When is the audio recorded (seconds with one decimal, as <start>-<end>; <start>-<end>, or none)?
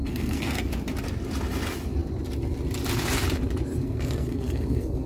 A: 0.7-3.8